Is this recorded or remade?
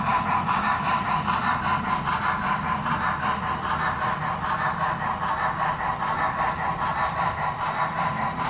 recorded